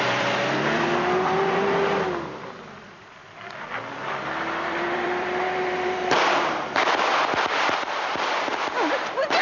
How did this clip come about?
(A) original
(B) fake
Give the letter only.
B